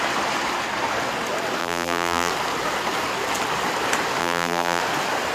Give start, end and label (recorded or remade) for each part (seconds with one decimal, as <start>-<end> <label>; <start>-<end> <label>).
0.0-1.6 recorded; 1.6-2.3 remade; 2.3-4.2 recorded; 4.2-4.8 remade; 4.8-5.3 recorded